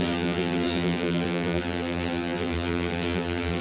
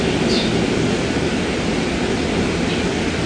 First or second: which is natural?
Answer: second